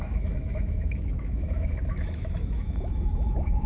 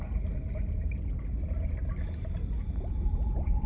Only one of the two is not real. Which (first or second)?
first